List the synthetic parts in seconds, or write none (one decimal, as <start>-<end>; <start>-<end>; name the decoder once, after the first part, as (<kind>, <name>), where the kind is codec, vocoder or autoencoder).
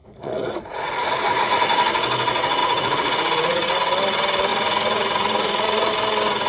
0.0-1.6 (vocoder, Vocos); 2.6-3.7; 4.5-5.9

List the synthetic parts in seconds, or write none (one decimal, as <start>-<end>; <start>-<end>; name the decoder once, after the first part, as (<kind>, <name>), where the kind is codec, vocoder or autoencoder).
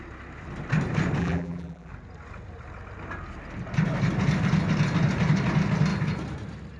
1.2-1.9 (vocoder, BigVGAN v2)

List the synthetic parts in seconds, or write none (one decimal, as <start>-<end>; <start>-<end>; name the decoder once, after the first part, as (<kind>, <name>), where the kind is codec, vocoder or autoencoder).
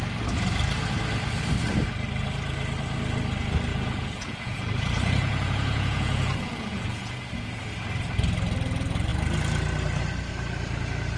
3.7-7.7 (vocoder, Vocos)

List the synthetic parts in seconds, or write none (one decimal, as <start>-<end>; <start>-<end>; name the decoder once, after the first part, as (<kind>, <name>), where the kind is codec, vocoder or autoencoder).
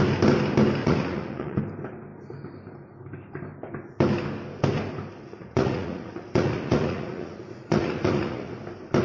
0.8-1.6 (vocoder, Vocos); 5.3-8.6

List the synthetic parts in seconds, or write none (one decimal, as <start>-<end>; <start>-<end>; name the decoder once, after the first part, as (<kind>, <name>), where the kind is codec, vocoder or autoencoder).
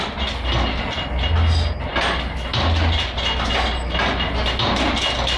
none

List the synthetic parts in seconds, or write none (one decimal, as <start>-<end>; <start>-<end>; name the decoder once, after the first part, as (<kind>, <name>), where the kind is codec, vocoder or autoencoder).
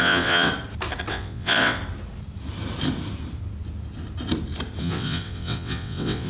0.0-0.5 (vocoder, WaveNeXt); 1.1-1.8; 4.8-6.3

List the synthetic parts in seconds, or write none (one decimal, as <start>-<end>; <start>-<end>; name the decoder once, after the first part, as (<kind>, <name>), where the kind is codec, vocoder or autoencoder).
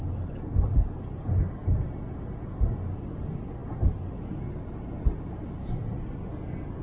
none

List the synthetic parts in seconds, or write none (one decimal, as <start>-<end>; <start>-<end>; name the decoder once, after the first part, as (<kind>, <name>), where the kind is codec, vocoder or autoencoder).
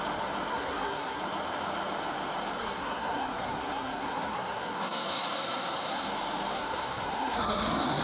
0.5-1.2 (codec, SNAC); 2.6-6.1; 6.5-8.0